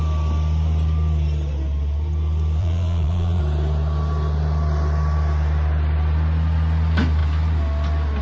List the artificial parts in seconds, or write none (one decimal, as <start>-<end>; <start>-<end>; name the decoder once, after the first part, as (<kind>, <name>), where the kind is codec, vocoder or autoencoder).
2.6-3.4 (vocoder, Vocos)